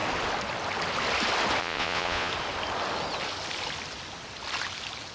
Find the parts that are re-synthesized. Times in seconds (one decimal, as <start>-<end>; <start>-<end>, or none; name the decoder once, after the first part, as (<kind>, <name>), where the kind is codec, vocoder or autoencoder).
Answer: 1.6-2.3 (vocoder, Vocos)